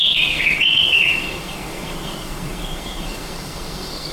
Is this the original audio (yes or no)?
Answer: no